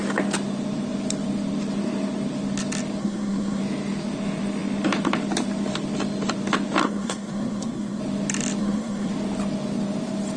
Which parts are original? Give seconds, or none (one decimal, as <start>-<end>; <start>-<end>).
0.0-3.0; 3.6-6.8; 8.0-8.6; 9.1-10.4